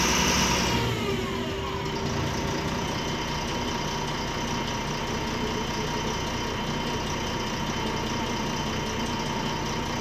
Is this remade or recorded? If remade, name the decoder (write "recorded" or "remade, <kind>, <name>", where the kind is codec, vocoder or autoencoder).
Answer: recorded